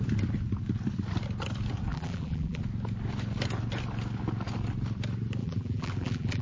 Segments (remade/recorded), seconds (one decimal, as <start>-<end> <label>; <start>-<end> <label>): 0.0-1.9 recorded; 1.9-2.6 remade; 2.6-5.4 recorded; 5.4-6.4 remade